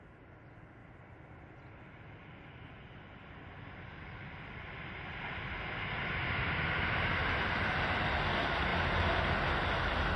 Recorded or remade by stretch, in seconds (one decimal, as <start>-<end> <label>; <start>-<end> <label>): 0.0-0.8 recorded; 0.8-5.6 remade; 5.6-7.2 recorded; 7.2-8.2 remade; 8.2-10.2 recorded